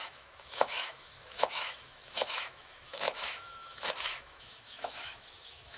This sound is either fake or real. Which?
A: fake